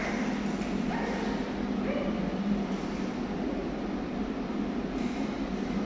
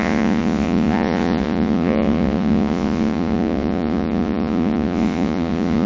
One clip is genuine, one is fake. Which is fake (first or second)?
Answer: second